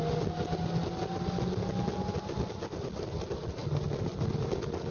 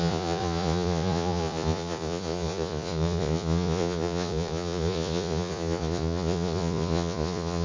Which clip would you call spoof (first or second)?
second